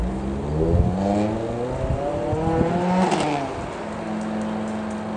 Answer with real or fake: real